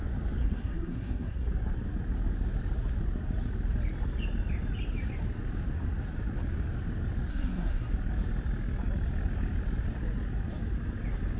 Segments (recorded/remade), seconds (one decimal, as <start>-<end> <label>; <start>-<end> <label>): 0.0-0.4 recorded; 0.4-1.5 remade; 1.5-7.3 recorded; 7.3-7.9 remade; 7.9-11.4 recorded